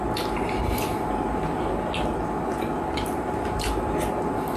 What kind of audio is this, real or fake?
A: real